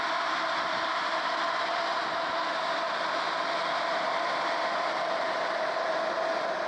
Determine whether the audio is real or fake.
fake